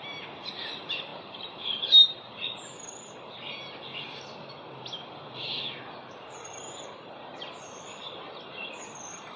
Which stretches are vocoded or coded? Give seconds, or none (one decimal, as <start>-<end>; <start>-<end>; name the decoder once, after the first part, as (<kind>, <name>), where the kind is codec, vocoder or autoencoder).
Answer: 1.1-2.2 (vocoder, BigVGAN v2)